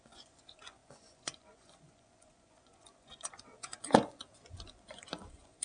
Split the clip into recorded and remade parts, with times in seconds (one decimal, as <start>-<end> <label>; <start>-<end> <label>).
0.0-5.6 remade